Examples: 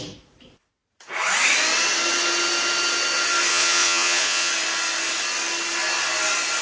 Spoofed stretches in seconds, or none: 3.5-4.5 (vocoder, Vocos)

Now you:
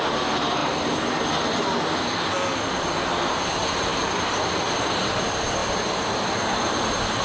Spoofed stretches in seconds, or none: none

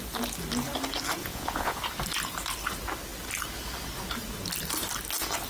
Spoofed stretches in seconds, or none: 1.2-1.8 (vocoder, Vocos)

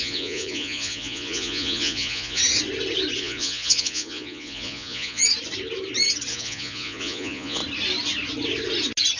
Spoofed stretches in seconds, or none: 0.0-2.4 (vocoder, Vocos); 3.2-5.2; 6.3-7.6

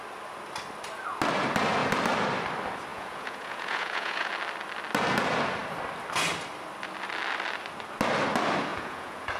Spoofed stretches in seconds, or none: 2.9-4.3 (vocoder, Vocos); 8.7-9.4

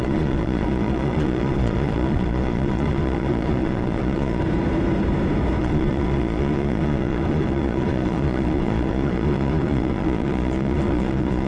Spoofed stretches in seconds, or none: 0.0-4.4 (vocoder, Vocos); 5.6-11.5

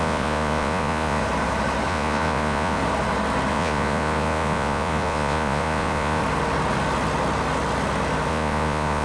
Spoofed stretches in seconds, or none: 0.0-1.2 (vocoder, Vocos); 1.9-2.8; 3.5-6.2; 8.3-9.0

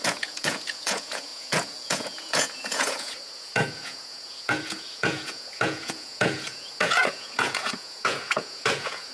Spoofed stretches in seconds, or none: 0.0-9.1 (vocoder, Vocos)